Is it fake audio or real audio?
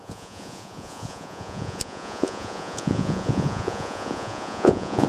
fake